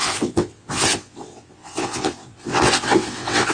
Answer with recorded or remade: remade